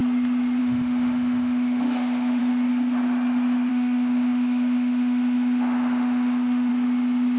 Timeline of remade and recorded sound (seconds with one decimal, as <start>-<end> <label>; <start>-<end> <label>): 0.0-0.6 recorded; 0.6-2.4 remade; 2.4-3.7 recorded; 3.7-6.7 remade; 6.7-7.4 recorded